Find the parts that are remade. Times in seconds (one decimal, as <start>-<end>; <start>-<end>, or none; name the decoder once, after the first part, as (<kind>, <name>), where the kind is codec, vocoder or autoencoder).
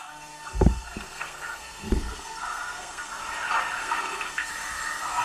0.0-3.1 (codec, SNAC); 3.8-4.5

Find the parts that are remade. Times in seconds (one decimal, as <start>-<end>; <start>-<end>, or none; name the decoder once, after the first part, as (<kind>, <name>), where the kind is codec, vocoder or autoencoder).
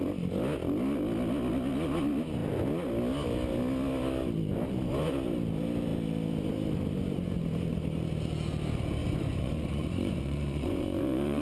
9.0-11.4 (vocoder, Vocos)